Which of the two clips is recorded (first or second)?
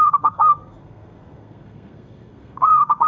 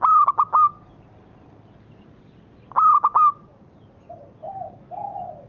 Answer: second